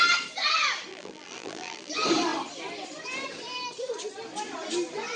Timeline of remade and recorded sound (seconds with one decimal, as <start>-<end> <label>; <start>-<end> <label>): 0.0-0.9 recorded; 0.9-1.9 remade; 1.9-5.2 recorded